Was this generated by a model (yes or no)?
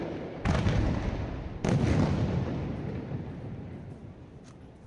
no